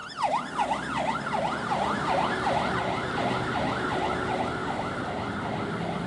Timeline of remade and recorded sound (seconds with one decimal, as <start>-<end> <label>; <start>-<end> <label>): 0.0-6.1 recorded